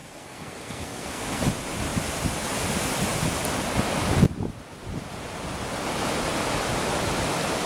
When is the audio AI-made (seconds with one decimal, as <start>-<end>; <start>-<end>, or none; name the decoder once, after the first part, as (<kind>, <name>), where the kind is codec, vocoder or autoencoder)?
0.0-1.4 (codec, SNAC)